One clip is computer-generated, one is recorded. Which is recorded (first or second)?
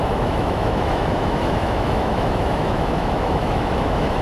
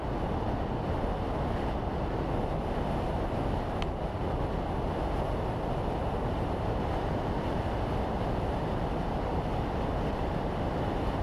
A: second